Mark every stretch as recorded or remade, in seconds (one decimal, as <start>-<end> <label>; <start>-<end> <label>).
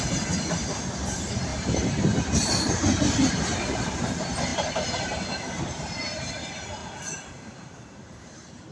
0.0-6.8 remade; 6.8-7.3 recorded; 7.3-8.7 remade